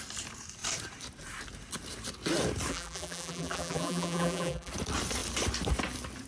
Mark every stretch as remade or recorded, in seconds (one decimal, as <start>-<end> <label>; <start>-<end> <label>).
0.0-2.7 recorded; 2.7-4.7 remade; 4.7-6.3 recorded